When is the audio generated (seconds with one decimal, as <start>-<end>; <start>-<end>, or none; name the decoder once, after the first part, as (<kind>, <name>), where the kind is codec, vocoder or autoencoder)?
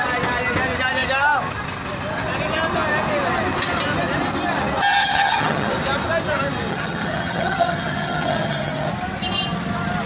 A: 5.0-5.7 (vocoder, HiFi-GAN); 6.7-8.9